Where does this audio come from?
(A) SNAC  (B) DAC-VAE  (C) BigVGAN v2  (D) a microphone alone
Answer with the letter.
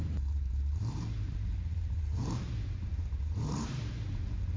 C